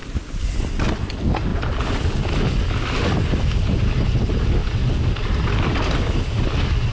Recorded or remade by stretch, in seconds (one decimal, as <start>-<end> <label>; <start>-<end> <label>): 0.0-6.9 recorded